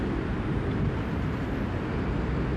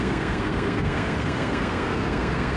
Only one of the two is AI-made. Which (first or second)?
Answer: second